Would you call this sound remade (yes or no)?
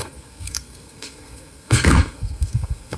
yes